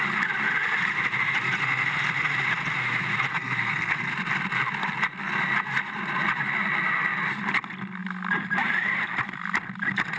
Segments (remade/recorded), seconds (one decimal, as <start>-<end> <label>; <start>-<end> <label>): 0.0-3.3 recorded; 3.3-3.9 remade; 3.9-10.2 recorded